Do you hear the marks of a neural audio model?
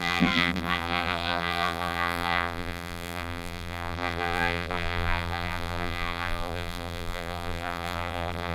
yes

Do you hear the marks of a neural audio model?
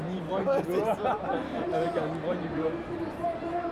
yes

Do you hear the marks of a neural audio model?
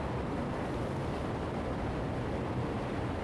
no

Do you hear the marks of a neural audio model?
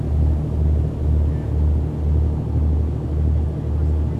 no